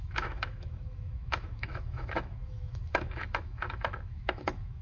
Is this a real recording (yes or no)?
no